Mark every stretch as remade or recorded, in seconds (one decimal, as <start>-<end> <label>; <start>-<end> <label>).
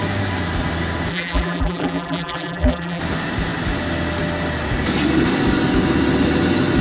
0.0-1.1 recorded; 1.1-3.0 remade; 3.0-6.8 recorded